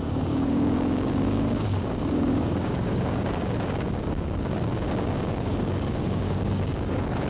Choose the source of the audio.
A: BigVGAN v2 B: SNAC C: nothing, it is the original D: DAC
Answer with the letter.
D